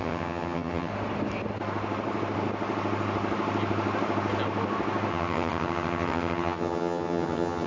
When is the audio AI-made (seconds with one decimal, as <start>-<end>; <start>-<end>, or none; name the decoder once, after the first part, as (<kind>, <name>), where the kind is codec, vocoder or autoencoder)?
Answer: 0.0-0.9 (vocoder, HiFi-GAN); 5.1-7.7